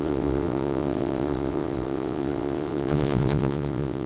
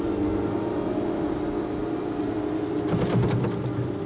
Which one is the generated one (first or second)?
first